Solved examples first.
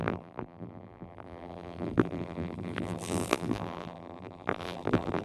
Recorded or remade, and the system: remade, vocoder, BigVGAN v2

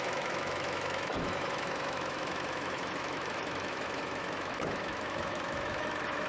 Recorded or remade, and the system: remade, autoencoder, DAC-VAE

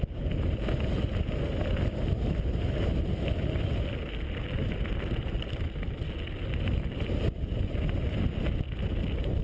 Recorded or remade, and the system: recorded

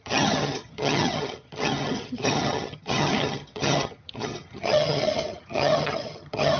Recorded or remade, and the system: remade, vocoder, HiFi-GAN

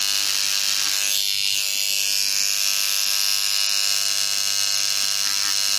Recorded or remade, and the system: recorded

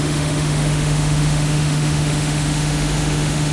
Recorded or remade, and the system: remade, autoencoder, DAC-VAE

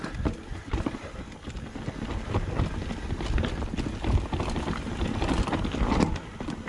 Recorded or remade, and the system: recorded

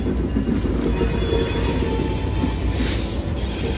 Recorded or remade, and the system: recorded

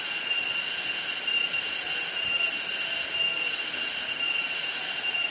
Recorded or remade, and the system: recorded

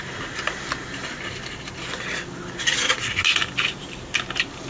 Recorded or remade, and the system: recorded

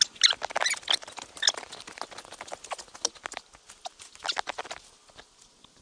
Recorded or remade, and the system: recorded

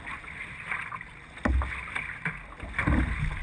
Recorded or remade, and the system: recorded